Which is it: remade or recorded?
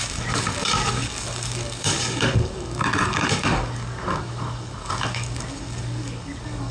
remade